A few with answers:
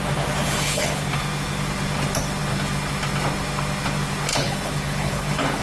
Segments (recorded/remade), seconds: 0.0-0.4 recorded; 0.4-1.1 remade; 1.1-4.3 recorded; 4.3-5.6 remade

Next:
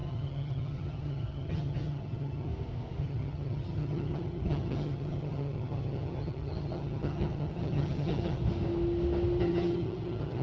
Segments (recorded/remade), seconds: 0.0-2.5 remade; 2.5-3.0 recorded; 3.0-8.4 remade; 8.4-9.4 recorded; 9.4-10.4 remade

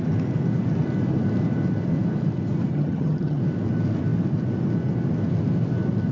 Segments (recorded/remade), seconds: 0.0-2.7 recorded; 2.7-3.4 remade; 3.4-6.1 recorded

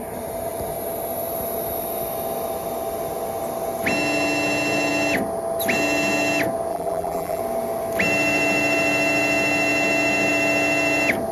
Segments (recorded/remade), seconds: 0.0-6.7 recorded; 6.7-7.4 remade; 7.4-11.3 recorded

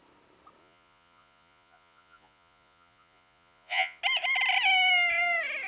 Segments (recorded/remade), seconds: 0.0-0.6 recorded; 0.6-4.0 remade; 4.0-5.7 recorded